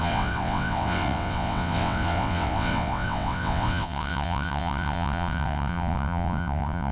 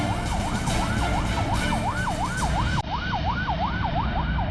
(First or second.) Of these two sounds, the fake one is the first